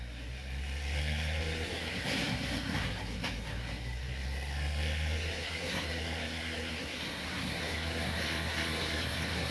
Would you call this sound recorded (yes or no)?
no